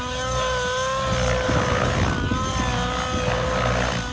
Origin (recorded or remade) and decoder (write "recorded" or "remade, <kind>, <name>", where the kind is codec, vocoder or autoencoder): recorded